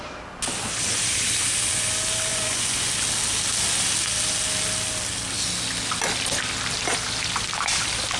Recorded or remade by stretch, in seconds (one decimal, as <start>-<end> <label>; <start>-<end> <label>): 0.0-2.3 recorded; 2.3-2.9 remade; 2.9-8.2 recorded

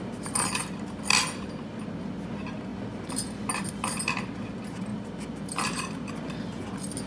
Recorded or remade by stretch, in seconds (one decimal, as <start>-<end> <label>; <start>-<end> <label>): 0.0-0.6 recorded; 0.6-1.2 remade; 1.2-4.9 recorded; 4.9-6.6 remade; 6.6-7.1 recorded

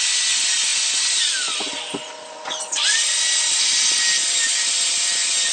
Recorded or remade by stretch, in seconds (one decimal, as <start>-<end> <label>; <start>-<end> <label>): 0.0-5.5 recorded